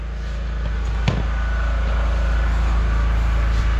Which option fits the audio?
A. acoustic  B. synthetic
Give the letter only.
A